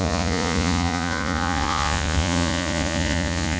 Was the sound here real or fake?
fake